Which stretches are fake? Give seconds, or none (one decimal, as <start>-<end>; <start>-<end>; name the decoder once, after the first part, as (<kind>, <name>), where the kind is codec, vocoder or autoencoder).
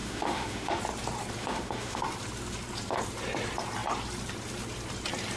0.0-0.8 (autoencoder, DAC-VAE); 1.4-2.0